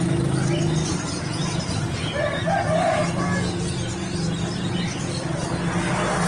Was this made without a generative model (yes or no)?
yes